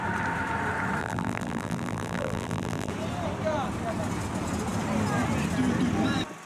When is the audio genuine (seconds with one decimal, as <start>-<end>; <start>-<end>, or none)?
0.0-1.0; 2.9-6.5